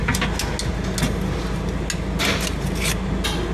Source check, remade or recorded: recorded